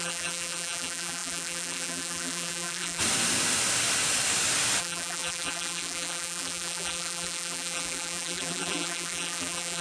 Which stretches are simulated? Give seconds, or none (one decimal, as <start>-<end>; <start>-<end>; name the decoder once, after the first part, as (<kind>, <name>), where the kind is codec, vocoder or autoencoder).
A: 0.0-3.0 (vocoder, BigVGAN v2); 4.8-9.8